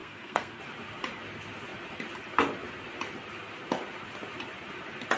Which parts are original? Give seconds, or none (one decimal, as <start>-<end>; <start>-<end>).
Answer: 0.6-5.2